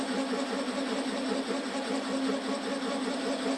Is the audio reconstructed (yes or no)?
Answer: no